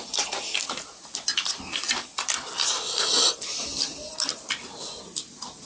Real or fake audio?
real